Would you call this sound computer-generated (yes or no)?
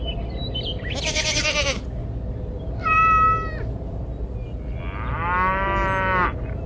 no